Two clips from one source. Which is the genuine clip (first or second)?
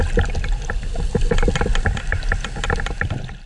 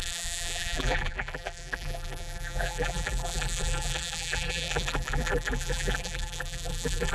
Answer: first